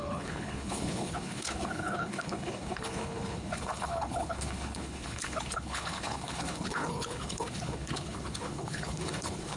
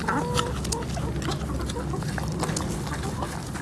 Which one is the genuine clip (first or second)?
second